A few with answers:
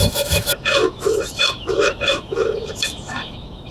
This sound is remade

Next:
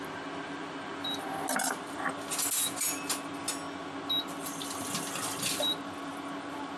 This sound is recorded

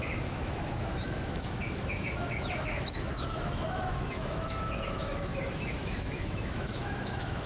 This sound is remade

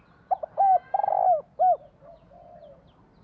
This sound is recorded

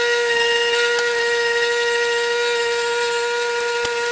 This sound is recorded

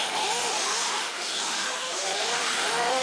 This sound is remade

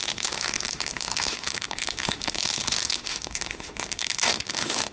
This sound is remade